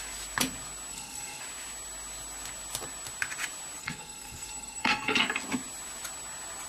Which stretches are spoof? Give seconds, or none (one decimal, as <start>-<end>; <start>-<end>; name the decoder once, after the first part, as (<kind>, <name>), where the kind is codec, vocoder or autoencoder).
0.9-1.4 (codec, SNAC); 3.8-5.2